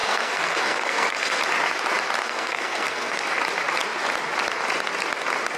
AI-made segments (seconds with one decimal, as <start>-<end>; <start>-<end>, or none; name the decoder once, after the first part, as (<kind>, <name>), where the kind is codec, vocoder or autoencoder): 0.0-1.4 (codec, SNAC); 2.2-3.2